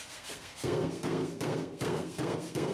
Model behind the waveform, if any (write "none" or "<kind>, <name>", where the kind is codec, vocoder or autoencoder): codec, SNAC